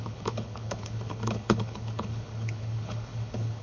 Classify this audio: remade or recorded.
remade